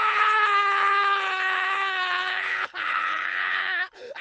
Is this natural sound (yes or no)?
no